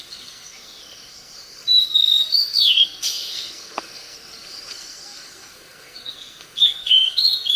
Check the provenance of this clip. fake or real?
fake